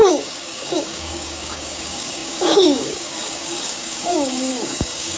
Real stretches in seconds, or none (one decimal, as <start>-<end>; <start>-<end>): none